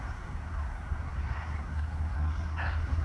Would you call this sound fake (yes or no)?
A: yes